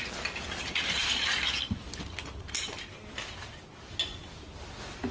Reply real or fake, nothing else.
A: real